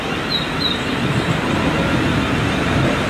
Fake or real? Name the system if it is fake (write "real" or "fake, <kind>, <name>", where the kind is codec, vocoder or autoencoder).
real